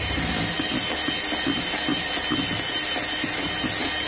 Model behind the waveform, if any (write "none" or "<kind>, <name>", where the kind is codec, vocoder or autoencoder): none